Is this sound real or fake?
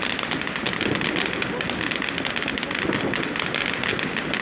real